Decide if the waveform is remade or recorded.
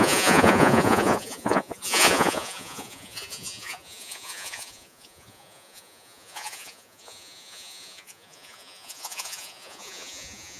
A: remade